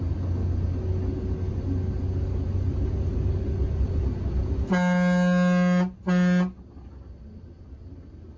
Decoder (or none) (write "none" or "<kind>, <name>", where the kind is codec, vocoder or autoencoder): none